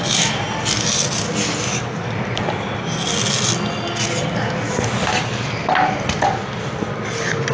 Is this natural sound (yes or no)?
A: yes